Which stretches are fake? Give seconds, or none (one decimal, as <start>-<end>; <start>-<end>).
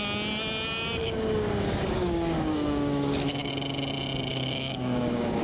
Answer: 1.0-3.5; 4.3-5.4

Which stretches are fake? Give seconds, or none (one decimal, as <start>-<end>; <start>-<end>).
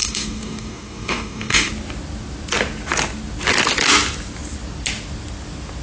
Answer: 0.0-1.7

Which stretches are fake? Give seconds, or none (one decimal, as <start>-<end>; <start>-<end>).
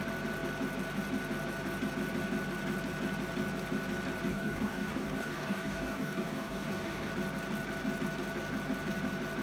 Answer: 4.3-7.1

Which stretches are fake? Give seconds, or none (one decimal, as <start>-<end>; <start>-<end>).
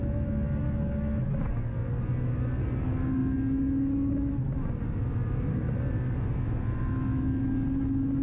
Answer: none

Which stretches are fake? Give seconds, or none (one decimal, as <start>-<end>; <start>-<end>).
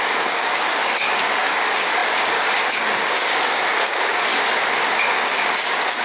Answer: 0.0-4.3; 5.0-6.0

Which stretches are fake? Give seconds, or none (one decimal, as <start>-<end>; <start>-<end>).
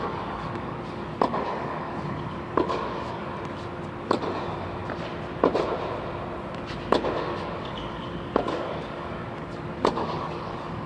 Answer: 0.0-3.3; 4.0-4.8; 7.2-10.9